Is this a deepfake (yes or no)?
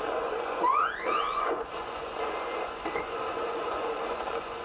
yes